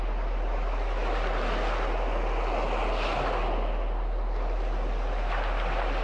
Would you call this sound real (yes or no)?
yes